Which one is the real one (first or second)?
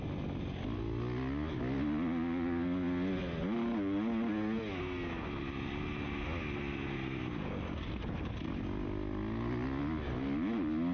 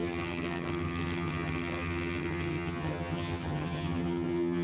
first